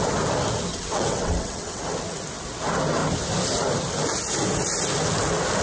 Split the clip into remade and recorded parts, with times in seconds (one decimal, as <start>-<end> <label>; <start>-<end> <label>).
0.0-0.7 recorded; 0.7-1.8 remade; 1.8-5.6 recorded